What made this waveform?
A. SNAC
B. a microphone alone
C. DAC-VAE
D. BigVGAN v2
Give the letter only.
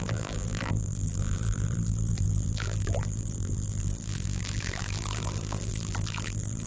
D